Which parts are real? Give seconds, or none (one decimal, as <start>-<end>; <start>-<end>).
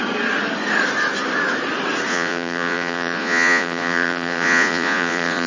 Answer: 0.0-2.1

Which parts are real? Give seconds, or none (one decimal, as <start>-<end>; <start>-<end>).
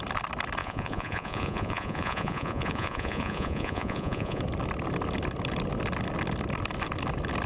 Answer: 0.0-0.6; 4.4-7.5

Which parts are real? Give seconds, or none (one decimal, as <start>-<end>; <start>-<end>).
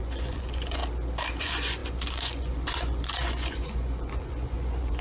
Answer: 0.8-1.4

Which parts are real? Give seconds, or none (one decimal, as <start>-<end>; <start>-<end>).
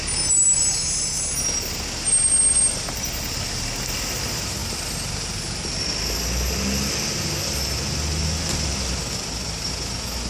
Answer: 0.0-10.3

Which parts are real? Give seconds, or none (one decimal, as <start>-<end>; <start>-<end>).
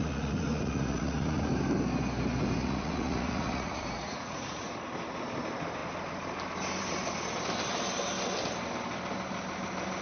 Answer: 1.5-2.6; 4.7-10.0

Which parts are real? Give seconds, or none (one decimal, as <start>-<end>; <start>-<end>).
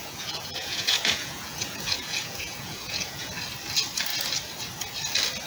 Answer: 3.3-5.5